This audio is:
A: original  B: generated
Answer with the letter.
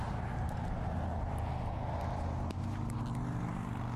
A